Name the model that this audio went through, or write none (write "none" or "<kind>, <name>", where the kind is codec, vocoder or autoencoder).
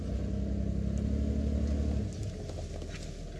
none